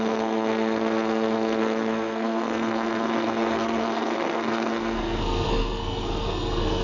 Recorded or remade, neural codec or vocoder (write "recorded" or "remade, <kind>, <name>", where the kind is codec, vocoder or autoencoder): remade, codec, SNAC